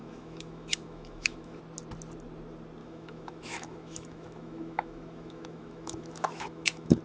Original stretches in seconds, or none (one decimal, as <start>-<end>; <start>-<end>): 1.6-2.8